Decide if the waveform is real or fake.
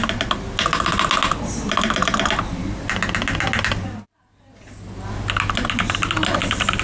real